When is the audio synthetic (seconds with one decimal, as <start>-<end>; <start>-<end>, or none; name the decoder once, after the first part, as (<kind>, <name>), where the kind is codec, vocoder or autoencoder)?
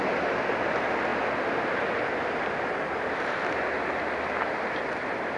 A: none